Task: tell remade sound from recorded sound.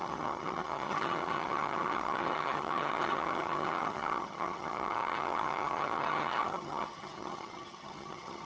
remade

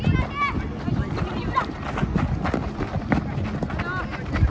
recorded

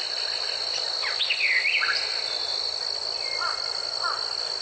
recorded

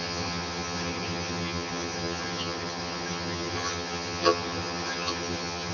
remade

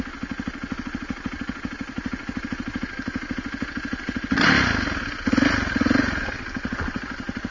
recorded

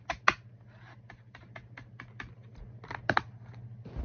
recorded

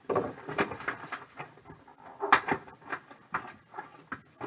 recorded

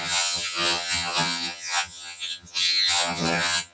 remade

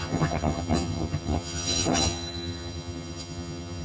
remade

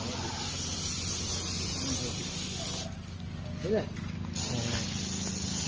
recorded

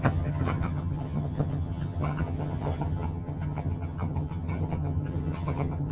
remade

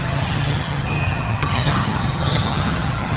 remade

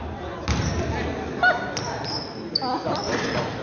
recorded